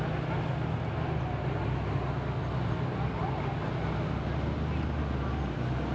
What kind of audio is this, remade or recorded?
recorded